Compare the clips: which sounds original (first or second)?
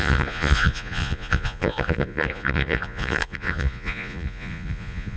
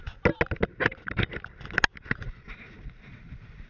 second